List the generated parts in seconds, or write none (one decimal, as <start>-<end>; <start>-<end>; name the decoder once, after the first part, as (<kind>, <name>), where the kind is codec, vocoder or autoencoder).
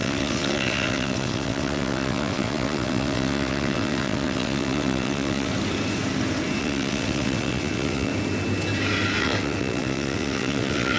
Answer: 0.0-5.5 (vocoder, WaveNeXt); 6.6-8.1; 9.2-11.0